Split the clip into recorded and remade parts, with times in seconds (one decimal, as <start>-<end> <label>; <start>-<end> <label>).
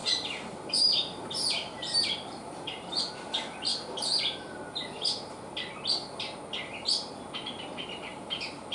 0.0-3.1 remade; 3.1-8.1 recorded; 8.1-8.7 remade